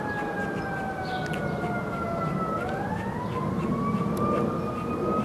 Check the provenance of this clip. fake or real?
real